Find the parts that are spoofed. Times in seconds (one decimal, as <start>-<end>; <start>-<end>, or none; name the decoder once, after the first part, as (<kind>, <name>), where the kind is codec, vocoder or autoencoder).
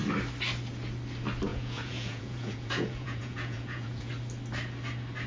1.5-4.1 (vocoder, Vocos)